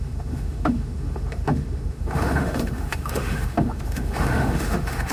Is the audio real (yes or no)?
no